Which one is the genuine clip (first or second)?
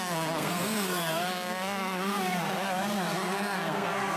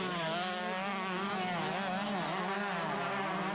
second